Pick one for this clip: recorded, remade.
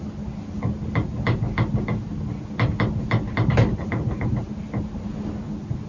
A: recorded